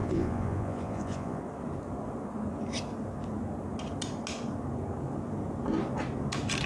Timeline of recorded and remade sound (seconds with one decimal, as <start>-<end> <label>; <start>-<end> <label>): 0.0-1.4 remade; 1.4-6.7 recorded

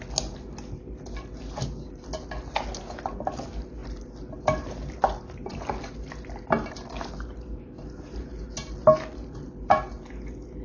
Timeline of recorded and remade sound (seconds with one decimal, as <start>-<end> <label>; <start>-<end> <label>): 0.0-10.6 recorded

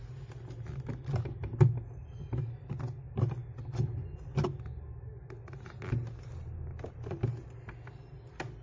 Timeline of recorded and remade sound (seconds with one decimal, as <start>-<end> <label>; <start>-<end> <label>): 0.0-8.6 recorded

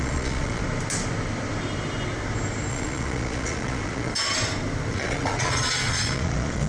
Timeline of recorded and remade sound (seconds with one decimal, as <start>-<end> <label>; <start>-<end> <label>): 0.0-0.6 remade; 0.6-2.7 recorded; 2.7-4.1 remade; 4.1-4.9 recorded; 4.9-6.7 remade

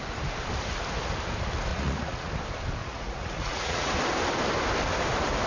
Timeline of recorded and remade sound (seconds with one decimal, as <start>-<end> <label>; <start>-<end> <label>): 0.0-1.7 recorded; 1.7-2.3 remade; 2.3-2.8 recorded; 2.8-3.9 remade; 3.9-5.5 recorded

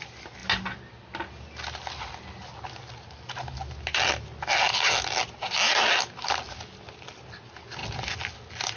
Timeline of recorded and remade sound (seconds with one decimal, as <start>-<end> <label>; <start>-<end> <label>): 0.0-8.8 recorded